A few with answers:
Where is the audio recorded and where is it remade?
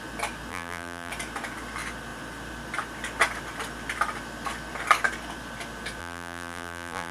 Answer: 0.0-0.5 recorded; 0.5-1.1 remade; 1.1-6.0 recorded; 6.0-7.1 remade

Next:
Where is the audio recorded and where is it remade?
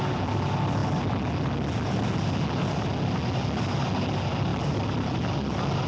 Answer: 0.0-4.5 recorded; 4.5-5.9 remade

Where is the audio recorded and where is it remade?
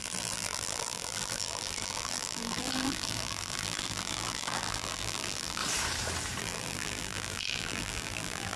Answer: 0.0-5.6 remade; 5.6-6.4 recorded; 6.4-8.6 remade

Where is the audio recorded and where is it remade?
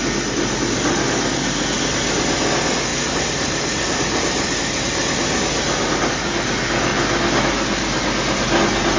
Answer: 0.0-2.9 recorded; 2.9-6.1 remade; 6.1-9.0 recorded